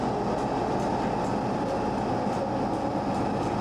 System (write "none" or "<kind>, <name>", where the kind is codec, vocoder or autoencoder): none